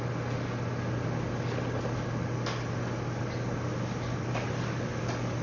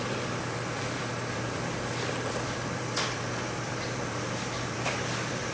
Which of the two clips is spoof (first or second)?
second